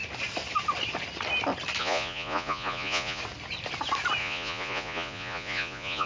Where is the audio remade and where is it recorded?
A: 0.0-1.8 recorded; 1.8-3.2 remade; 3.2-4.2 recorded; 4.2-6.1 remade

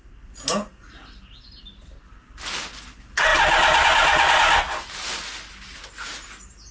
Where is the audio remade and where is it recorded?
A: 0.0-6.7 recorded

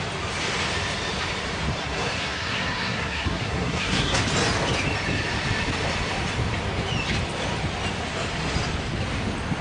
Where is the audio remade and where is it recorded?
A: 0.0-1.8 recorded; 1.8-4.2 remade; 4.2-9.6 recorded

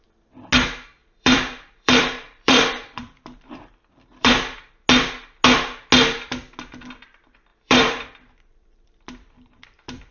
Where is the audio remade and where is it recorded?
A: 0.0-1.0 recorded; 1.0-4.7 remade; 4.7-7.5 recorded; 7.5-10.1 remade

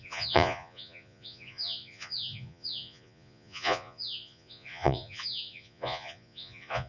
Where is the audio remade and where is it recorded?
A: 0.0-6.9 remade